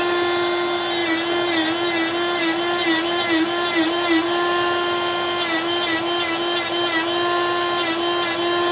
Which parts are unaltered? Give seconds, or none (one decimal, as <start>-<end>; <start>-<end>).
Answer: 0.0-8.7